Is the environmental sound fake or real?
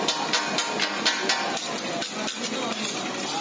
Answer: real